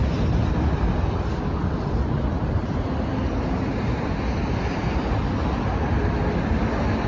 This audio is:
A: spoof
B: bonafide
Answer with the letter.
B